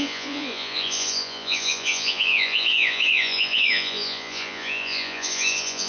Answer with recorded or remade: remade